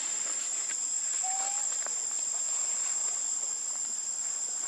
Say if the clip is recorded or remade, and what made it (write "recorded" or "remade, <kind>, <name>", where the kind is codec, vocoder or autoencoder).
recorded